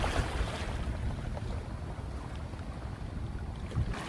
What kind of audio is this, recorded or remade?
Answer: recorded